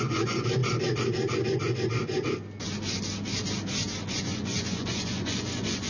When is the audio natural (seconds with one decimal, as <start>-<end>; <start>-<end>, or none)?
0.6-4.1